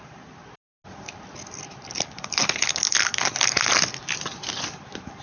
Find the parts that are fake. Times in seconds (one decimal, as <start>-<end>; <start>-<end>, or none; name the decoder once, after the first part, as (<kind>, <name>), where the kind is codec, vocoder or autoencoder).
none